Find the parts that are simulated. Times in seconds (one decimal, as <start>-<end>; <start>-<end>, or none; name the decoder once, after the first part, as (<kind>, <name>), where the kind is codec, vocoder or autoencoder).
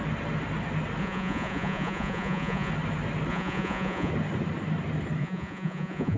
1.0-2.7 (vocoder, Vocos); 3.3-4.1; 5.2-6.2